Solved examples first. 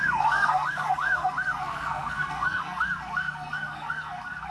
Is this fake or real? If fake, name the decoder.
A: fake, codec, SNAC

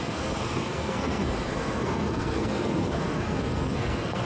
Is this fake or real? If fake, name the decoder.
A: fake, codec, SNAC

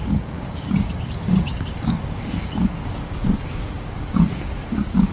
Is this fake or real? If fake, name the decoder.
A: fake, codec, DAC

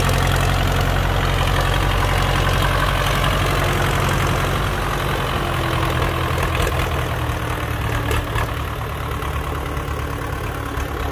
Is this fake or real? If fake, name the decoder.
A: real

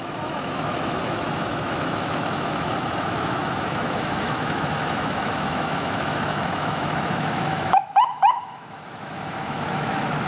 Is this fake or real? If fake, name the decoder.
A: fake, autoencoder, DAC-VAE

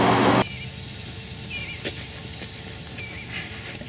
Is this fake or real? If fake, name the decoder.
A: real